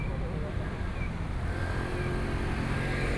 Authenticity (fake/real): real